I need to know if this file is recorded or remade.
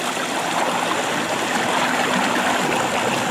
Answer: recorded